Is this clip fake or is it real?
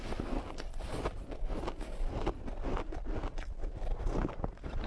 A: fake